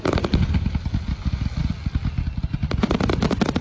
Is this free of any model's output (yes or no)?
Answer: yes